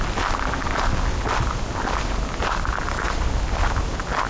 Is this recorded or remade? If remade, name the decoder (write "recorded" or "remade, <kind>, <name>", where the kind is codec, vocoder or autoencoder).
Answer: recorded